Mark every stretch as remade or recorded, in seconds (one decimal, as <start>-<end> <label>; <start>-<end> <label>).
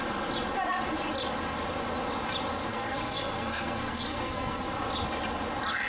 0.0-2.7 recorded; 2.7-4.6 remade; 4.6-5.9 recorded